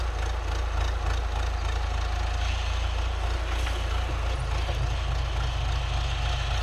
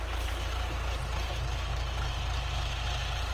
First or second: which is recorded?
first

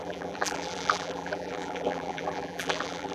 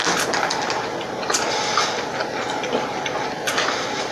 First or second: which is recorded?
second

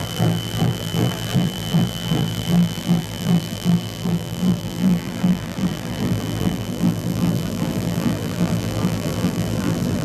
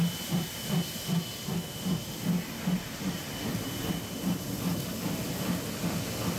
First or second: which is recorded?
second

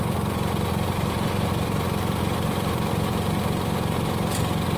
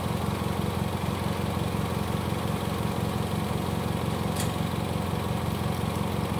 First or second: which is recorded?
second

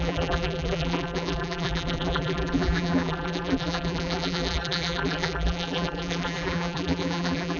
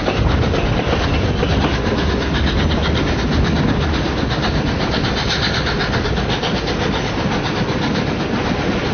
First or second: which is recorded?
second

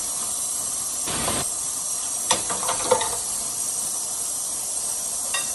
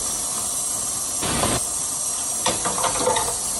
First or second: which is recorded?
second